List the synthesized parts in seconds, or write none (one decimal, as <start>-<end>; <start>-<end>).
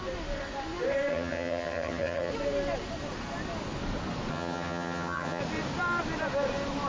1.1-2.3; 4.3-5.4